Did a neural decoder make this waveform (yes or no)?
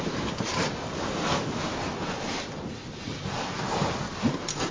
no